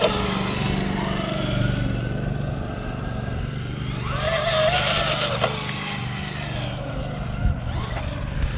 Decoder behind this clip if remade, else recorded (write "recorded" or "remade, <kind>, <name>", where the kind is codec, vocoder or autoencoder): recorded